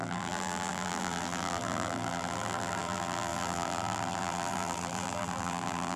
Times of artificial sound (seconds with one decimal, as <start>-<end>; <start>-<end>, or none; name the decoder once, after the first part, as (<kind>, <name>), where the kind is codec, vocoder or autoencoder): 0.0-6.0 (vocoder, BigVGAN v2)